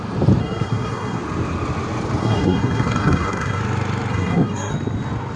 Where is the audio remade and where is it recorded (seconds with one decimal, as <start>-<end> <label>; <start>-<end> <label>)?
0.0-0.4 recorded; 0.4-1.2 remade; 1.2-2.2 recorded; 2.2-3.6 remade; 3.6-4.1 recorded; 4.1-4.7 remade; 4.7-5.4 recorded